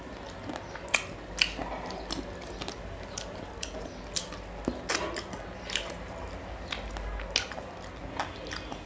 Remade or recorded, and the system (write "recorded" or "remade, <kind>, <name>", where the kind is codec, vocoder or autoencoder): recorded